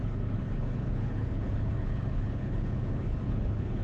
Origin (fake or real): fake